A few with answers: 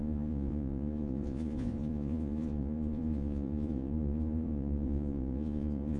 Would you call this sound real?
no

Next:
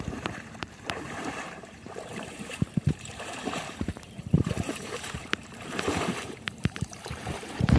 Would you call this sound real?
no